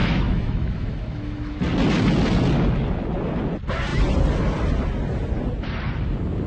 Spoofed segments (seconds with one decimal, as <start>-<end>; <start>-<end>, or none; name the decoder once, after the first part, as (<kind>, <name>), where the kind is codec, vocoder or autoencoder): 0.0-1.6 (autoencoder, DAC-VAE)